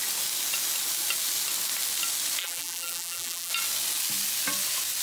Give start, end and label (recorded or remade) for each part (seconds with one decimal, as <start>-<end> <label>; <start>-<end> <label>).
0.0-2.4 recorded; 2.4-3.5 remade; 3.5-5.0 recorded